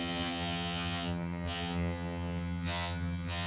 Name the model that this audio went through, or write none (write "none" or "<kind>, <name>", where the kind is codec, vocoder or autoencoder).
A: vocoder, HiFi-GAN